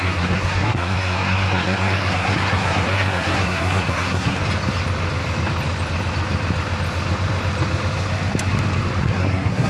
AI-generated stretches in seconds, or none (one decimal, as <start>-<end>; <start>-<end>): 0.0-4.4; 9.0-9.7

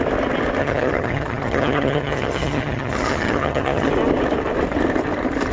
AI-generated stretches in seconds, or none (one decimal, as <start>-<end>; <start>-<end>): 0.6-3.9

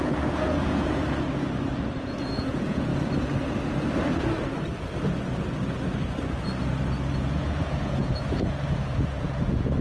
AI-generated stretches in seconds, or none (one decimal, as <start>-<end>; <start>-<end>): 0.0-1.0; 1.9-2.9; 7.2-9.8

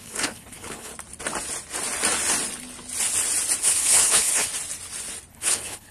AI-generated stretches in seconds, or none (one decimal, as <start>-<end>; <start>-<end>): 0.0-0.9; 3.6-4.5; 5.3-5.9

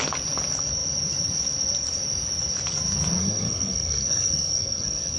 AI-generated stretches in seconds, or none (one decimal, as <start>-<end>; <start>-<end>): 3.2-5.2